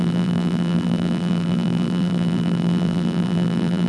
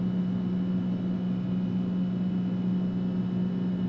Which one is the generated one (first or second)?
first